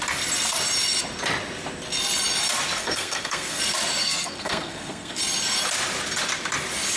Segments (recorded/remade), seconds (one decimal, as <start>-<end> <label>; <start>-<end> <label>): 0.0-2.8 recorded; 2.8-3.6 remade; 3.6-4.0 recorded; 4.0-5.2 remade; 5.2-7.0 recorded